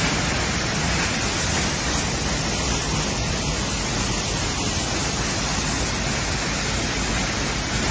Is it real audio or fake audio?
real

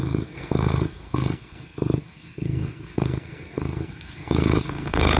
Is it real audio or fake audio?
fake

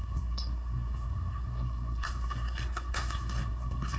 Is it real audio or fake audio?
fake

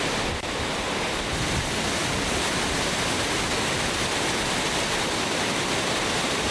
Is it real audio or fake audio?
real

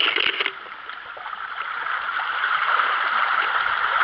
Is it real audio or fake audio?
real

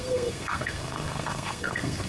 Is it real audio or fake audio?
fake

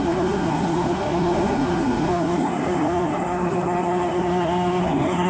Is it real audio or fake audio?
fake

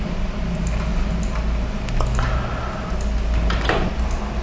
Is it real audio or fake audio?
real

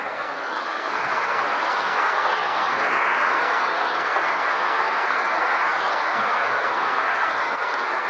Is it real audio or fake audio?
fake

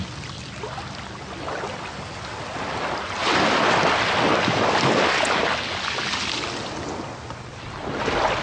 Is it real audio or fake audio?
real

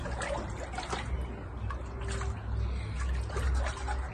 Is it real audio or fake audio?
real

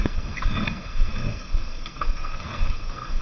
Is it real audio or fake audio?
fake